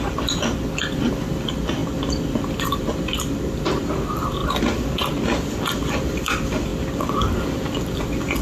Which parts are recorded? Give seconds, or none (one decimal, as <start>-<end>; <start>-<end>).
1.8-2.4; 4.4-5.8; 6.7-8.4